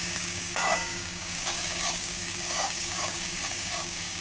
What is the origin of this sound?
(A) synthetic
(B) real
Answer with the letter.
A